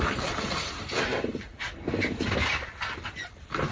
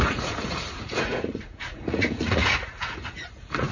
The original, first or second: first